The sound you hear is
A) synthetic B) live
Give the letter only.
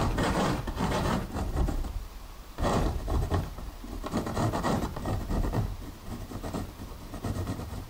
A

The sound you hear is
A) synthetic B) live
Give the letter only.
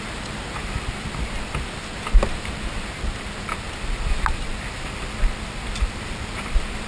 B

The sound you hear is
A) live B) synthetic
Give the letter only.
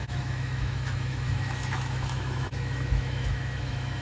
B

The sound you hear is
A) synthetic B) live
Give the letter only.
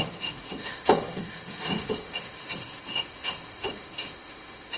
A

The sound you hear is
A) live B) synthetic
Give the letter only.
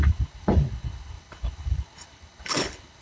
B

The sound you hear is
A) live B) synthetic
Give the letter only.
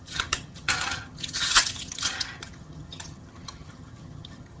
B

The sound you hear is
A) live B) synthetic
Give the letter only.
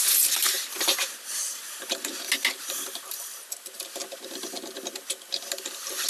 A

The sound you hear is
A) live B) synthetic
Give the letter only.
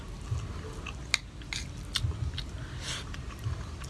A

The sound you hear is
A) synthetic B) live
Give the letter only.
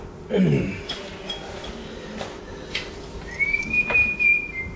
B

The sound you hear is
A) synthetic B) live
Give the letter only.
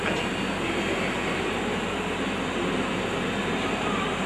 B